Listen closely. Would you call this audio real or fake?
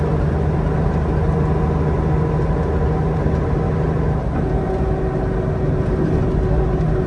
real